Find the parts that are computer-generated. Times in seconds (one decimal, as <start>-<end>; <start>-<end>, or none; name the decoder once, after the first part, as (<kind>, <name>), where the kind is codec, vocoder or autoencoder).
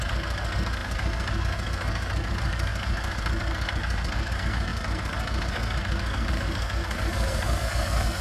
0.0-8.2 (codec, SNAC)